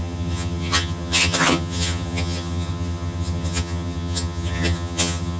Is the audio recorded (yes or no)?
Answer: no